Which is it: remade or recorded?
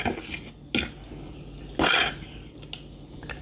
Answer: recorded